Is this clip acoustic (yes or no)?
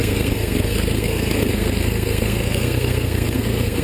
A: no